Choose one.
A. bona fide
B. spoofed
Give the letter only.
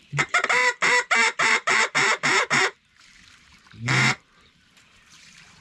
B